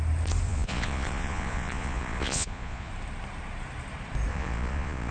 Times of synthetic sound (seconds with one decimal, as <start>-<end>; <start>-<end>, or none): 0.5-2.9; 4.3-5.1